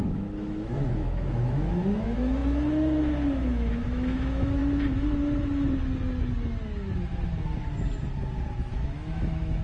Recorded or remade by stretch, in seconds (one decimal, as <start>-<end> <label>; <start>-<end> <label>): 0.0-4.6 remade; 4.6-8.5 recorded; 8.5-9.6 remade